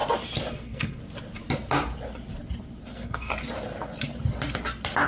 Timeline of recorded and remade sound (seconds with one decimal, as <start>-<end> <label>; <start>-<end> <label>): 0.0-0.5 recorded; 0.5-1.0 remade; 1.0-2.9 recorded; 2.9-3.3 remade; 3.3-5.1 recorded